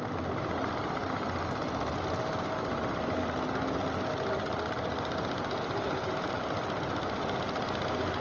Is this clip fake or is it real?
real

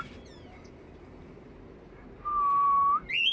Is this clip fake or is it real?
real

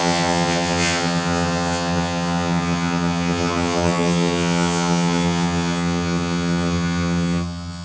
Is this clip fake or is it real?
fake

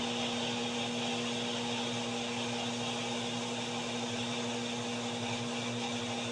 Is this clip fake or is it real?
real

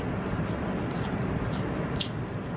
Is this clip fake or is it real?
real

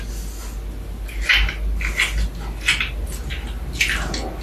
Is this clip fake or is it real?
real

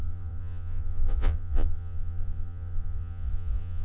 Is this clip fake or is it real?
fake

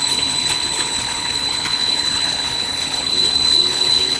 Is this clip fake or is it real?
fake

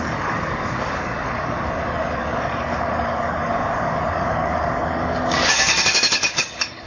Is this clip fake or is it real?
fake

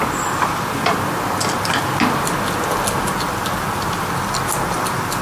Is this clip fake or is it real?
real